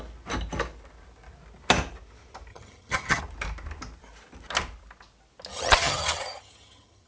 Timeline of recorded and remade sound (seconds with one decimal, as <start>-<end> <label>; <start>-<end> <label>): 0.0-2.5 recorded; 2.5-3.2 remade; 3.2-5.5 recorded; 5.5-7.1 remade